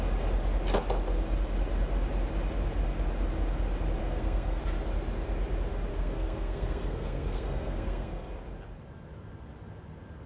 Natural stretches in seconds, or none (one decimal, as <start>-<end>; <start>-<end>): 0.0-4.0; 4.6-5.9; 8.3-10.3